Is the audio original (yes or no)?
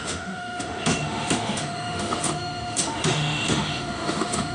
no